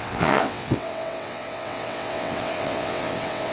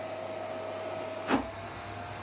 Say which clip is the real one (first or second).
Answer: second